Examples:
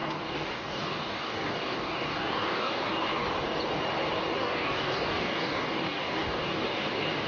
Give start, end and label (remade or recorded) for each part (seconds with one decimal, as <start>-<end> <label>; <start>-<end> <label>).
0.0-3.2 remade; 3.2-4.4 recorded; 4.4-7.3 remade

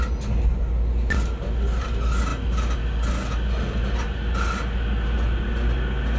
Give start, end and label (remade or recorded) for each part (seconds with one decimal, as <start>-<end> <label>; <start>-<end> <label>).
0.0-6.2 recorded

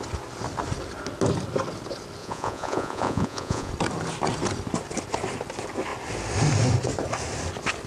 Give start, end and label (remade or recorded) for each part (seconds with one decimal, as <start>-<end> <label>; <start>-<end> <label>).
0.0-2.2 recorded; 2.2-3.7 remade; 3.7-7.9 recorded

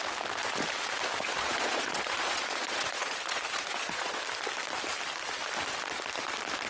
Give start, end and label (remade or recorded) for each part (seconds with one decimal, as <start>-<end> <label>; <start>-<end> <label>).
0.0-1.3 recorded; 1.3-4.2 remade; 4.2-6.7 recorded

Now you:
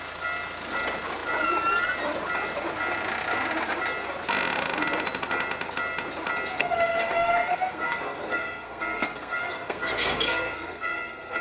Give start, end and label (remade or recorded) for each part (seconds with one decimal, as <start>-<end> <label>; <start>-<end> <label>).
0.0-6.6 recorded; 6.6-11.4 remade